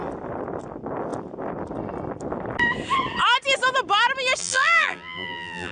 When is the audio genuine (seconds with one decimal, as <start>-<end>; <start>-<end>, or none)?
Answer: 0.0-4.4